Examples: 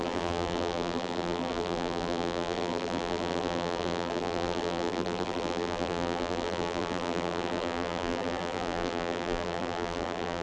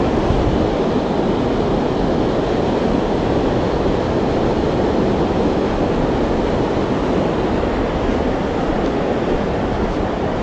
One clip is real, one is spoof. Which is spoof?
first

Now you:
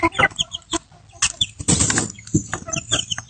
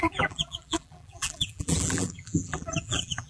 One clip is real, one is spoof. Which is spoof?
second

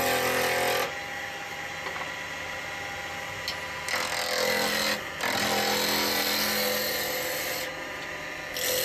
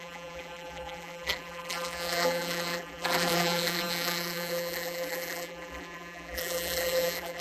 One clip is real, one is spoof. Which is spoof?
second